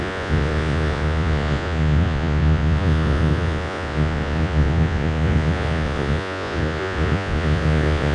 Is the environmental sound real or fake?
fake